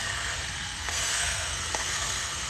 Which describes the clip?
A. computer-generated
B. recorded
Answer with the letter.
A